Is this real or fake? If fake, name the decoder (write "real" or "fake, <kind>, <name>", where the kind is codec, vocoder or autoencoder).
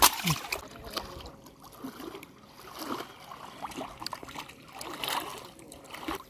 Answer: real